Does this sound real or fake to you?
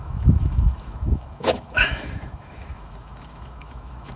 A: fake